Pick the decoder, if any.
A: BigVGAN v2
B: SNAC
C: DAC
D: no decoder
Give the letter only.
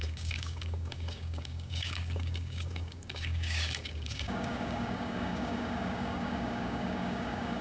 C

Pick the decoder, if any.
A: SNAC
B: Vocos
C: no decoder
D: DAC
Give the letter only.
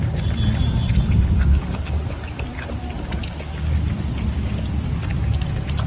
C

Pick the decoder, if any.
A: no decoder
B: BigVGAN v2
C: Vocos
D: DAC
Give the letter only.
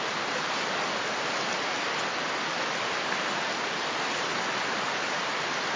A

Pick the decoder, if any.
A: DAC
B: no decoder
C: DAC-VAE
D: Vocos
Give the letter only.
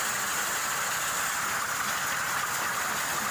B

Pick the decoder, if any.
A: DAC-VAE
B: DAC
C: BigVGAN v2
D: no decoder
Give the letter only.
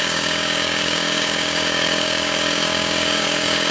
B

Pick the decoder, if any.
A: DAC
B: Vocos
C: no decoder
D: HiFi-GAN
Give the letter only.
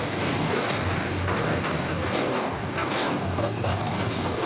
A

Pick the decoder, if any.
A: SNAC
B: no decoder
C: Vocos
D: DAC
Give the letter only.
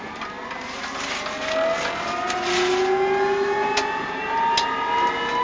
B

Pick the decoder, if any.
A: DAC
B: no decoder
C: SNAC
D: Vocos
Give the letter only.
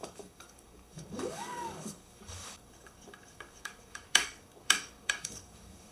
A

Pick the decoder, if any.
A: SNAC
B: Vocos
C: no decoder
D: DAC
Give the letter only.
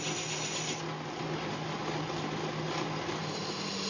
C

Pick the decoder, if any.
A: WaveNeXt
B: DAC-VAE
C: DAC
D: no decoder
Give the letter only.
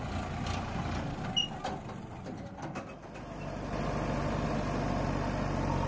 D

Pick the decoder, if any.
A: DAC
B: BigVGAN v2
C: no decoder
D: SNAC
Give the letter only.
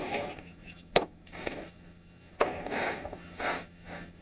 A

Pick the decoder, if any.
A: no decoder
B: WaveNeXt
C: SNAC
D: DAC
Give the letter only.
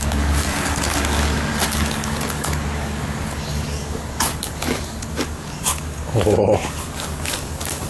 D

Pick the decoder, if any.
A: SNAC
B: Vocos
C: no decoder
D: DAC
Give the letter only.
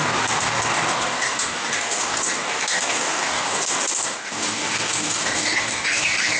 D